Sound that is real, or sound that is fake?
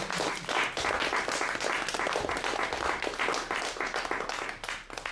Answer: real